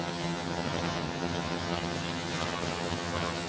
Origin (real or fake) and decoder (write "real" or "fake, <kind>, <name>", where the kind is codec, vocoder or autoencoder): fake, vocoder, HiFi-GAN